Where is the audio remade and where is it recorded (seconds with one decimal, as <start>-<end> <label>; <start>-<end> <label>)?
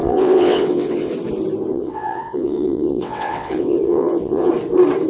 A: 0.0-1.1 remade; 1.1-1.7 recorded; 1.7-4.5 remade; 4.5-5.1 recorded